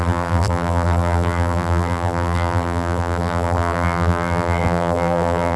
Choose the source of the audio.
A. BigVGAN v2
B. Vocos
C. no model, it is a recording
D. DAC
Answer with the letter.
A